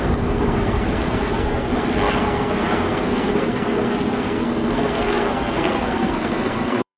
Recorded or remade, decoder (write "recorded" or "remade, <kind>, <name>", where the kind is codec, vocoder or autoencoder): remade, codec, SNAC